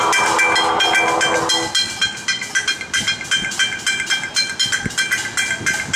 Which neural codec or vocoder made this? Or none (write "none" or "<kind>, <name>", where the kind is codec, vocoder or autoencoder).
none